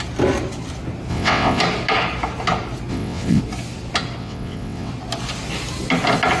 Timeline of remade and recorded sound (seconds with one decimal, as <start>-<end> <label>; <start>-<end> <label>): 0.0-1.1 recorded; 1.1-1.6 remade; 1.6-2.9 recorded; 2.9-3.4 remade; 3.4-4.2 recorded; 4.2-4.9 remade; 4.9-6.4 recorded